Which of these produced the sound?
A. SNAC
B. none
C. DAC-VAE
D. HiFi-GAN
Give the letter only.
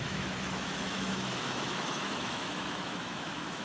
C